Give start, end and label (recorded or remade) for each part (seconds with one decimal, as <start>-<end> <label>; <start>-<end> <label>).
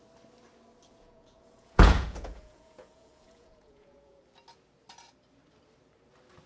0.0-0.9 recorded; 0.9-4.2 remade; 4.2-6.5 recorded